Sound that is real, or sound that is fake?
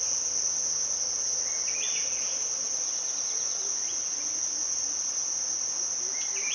real